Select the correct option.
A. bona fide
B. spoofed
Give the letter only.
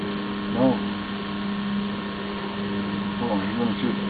A